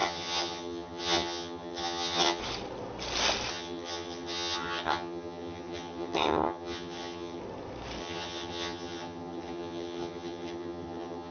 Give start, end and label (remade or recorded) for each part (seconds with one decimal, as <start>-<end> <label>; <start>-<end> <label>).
0.0-2.4 remade; 2.4-3.5 recorded; 3.5-7.4 remade; 7.4-8.0 recorded; 8.0-11.3 remade